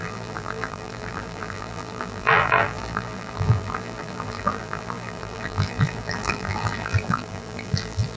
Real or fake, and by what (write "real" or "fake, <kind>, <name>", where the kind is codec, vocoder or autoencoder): fake, vocoder, BigVGAN v2